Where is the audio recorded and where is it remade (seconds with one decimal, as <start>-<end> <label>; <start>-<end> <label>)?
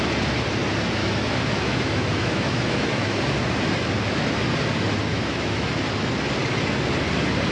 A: 0.0-1.0 recorded; 1.0-3.2 remade; 3.2-5.1 recorded; 5.1-5.7 remade; 5.7-7.5 recorded